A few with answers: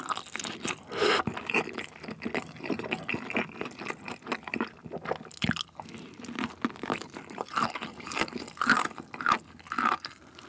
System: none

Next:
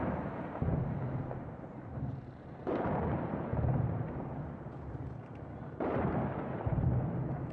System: vocoder, BigVGAN v2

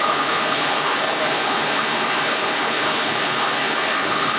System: codec, HILCodec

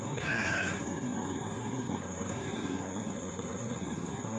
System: codec, SNAC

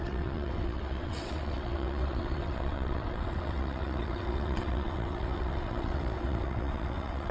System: vocoder, WaveNeXt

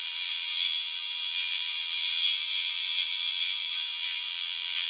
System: vocoder, BigVGAN v2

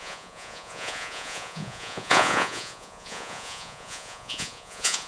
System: vocoder, Vocos